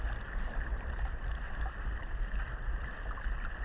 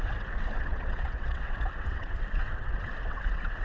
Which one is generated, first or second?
second